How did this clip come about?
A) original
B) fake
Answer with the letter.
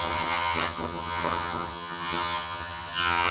B